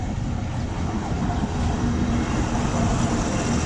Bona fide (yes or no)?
yes